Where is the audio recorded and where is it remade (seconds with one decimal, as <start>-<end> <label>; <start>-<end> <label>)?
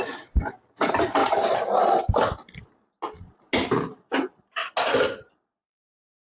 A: 0.0-1.2 remade; 1.2-3.9 recorded; 3.9-4.6 remade; 4.6-5.8 recorded; 5.8-6.2 remade